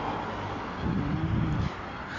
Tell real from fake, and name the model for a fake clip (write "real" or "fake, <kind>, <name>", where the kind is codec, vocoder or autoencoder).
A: real